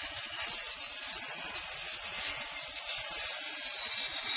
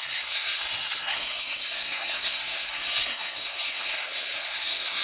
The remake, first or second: second